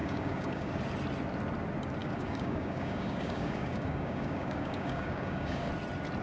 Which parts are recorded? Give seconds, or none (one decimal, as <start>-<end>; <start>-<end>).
0.7-2.0; 5.7-6.2